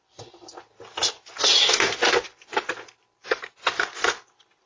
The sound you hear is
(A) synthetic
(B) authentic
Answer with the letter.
B